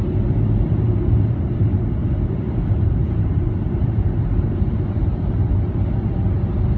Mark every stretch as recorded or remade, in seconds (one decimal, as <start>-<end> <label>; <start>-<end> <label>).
0.0-2.0 recorded; 2.0-5.5 remade; 5.5-6.8 recorded